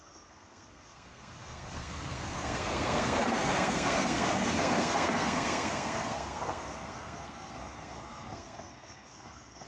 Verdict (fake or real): fake